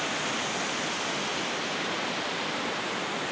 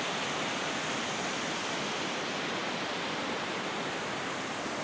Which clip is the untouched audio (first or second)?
first